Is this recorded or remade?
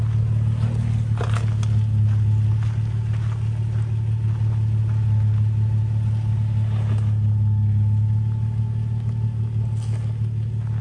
recorded